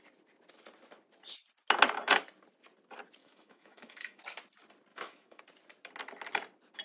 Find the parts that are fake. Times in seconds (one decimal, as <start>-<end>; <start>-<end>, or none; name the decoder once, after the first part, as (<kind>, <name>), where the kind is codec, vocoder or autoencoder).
3.2-4.2 (autoencoder, DAC-VAE); 4.9-5.4